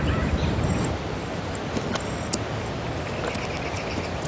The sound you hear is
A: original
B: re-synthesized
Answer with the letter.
A